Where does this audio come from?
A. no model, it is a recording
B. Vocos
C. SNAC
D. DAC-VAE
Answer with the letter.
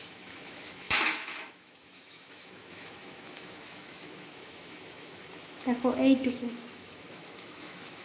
D